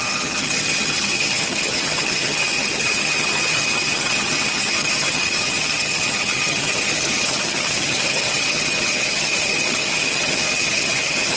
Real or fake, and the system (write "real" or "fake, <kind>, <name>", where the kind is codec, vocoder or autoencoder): fake, vocoder, HiFi-GAN